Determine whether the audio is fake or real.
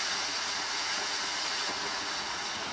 fake